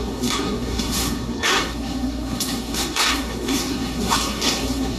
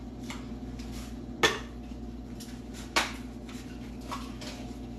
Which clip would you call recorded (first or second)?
second